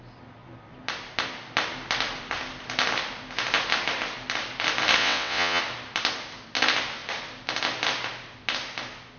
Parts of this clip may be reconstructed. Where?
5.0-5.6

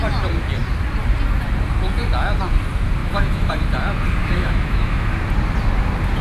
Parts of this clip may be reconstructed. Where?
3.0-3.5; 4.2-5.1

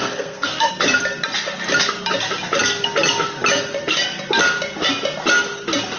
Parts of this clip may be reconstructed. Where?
0.0-0.7